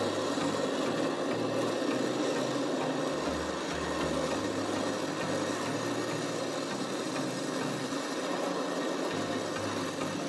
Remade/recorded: recorded